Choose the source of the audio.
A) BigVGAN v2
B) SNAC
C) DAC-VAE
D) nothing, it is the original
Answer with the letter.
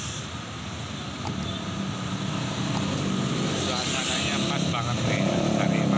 D